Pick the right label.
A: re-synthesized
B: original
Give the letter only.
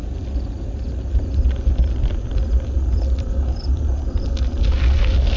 B